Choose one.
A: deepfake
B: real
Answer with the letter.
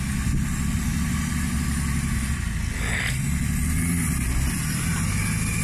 B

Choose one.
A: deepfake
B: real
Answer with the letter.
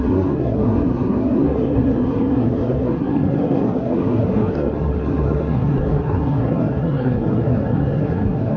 A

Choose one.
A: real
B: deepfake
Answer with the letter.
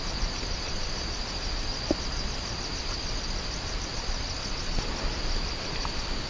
A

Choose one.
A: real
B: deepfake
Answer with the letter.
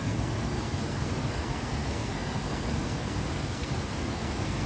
B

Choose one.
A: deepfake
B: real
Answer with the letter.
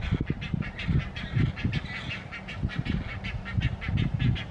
B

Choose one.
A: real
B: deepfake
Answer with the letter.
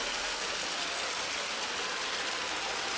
A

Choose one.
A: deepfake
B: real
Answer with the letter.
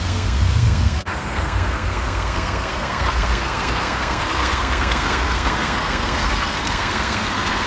A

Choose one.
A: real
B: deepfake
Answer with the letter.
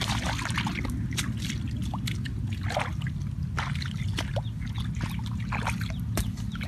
A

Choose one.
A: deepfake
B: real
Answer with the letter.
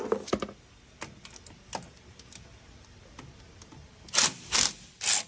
B